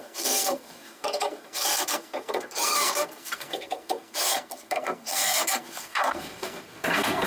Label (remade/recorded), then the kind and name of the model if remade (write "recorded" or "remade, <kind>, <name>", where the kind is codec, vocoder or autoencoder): remade, codec, SNAC